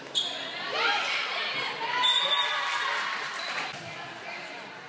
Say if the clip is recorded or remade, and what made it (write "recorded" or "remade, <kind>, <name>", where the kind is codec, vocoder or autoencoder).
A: remade, vocoder, BigVGAN v2